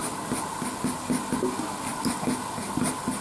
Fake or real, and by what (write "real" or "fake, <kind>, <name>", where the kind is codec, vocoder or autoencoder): real